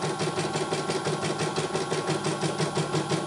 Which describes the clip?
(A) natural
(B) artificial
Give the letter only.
A